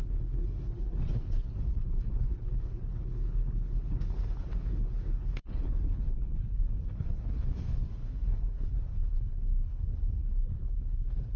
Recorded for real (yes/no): no